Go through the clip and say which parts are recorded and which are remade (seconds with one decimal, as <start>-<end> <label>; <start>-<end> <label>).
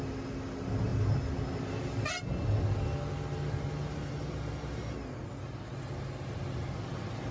0.0-7.3 recorded